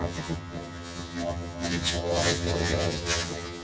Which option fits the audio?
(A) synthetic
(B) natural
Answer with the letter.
A